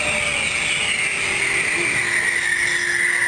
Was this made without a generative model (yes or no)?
yes